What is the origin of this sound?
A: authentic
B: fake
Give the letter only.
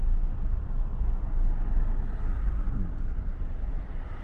A